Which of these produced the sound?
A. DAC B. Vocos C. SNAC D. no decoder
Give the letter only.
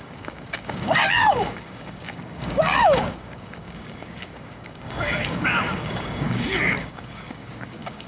A